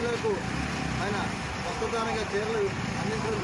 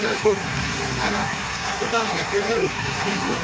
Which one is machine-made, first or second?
second